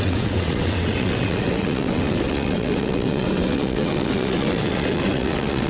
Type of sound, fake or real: fake